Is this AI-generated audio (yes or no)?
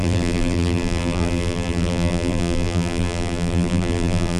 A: yes